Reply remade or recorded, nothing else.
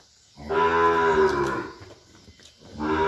recorded